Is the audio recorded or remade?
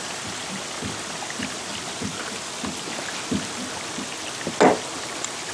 recorded